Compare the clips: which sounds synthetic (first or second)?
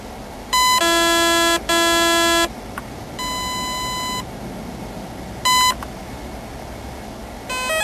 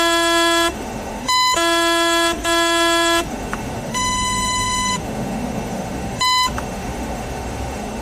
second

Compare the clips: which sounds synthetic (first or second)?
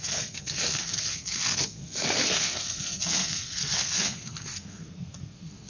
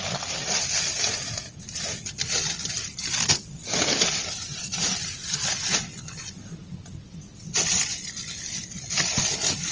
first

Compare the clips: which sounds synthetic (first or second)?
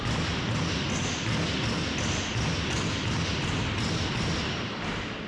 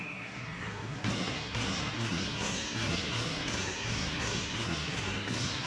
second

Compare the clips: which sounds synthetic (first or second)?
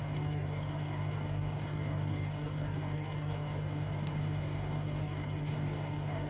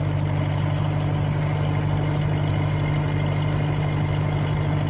first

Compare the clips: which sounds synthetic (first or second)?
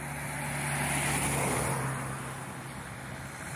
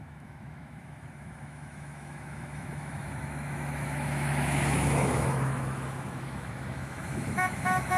second